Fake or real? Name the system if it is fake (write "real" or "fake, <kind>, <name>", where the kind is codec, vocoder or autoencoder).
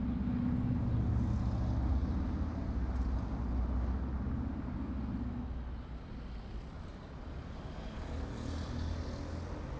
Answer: real